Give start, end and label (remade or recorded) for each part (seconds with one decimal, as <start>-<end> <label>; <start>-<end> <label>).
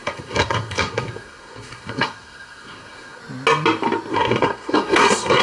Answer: 0.0-3.2 remade; 3.2-4.1 recorded; 4.1-5.4 remade